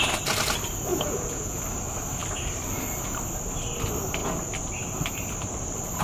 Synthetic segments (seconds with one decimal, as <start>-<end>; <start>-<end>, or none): 0.9-1.6